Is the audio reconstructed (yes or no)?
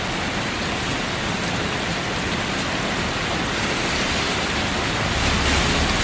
no